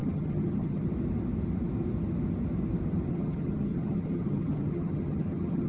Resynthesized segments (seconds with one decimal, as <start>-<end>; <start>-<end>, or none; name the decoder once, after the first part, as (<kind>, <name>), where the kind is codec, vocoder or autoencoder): 0.0-0.9 (vocoder, HiFi-GAN); 3.1-5.7